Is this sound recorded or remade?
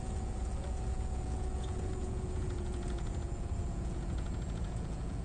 remade